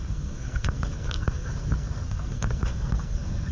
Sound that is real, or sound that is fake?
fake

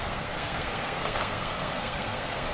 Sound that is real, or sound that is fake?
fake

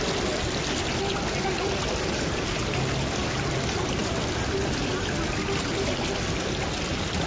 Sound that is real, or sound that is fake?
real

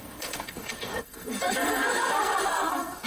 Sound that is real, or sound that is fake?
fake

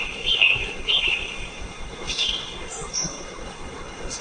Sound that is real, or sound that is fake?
fake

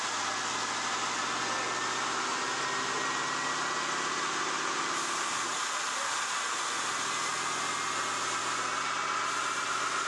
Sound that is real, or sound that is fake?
real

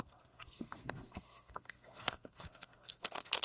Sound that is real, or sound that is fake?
fake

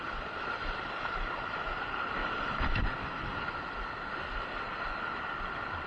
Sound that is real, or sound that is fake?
real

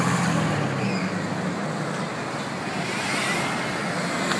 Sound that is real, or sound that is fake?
real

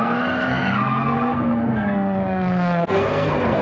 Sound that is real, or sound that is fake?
fake